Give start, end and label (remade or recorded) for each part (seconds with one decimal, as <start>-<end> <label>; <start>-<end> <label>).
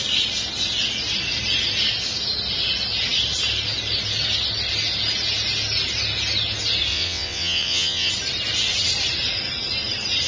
0.0-6.9 recorded; 6.9-8.1 remade; 8.1-10.3 recorded